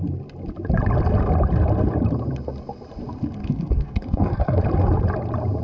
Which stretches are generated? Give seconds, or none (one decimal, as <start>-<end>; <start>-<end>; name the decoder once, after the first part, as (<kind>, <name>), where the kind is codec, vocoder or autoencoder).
3.4-4.6 (codec, SNAC)